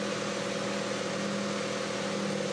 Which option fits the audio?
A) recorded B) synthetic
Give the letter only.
A